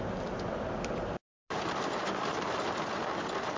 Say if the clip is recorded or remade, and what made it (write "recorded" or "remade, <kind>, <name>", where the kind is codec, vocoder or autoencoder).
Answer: recorded